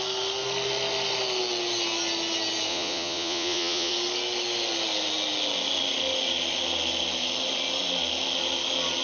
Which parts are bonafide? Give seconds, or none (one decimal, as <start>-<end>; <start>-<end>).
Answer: 0.0-2.7; 3.9-9.0